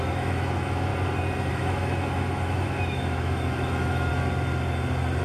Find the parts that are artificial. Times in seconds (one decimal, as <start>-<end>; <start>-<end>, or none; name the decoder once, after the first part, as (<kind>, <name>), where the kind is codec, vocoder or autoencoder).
0.0-0.9 (autoencoder, DAC-VAE); 1.5-4.1